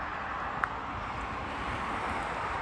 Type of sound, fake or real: real